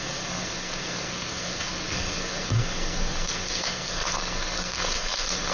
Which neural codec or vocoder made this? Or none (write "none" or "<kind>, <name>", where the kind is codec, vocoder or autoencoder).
codec, SNAC